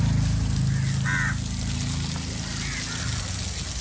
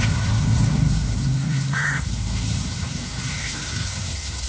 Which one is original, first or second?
first